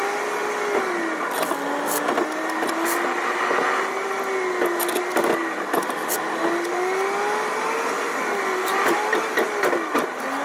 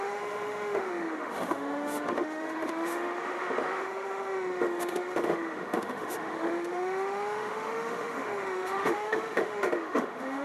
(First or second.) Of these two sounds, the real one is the first